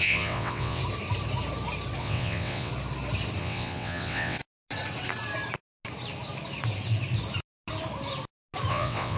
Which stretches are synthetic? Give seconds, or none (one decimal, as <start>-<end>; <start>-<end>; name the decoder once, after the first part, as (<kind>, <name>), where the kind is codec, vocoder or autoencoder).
0.0-0.8 (vocoder, WaveNeXt); 2.0-2.7; 3.4-4.4; 8.7-9.2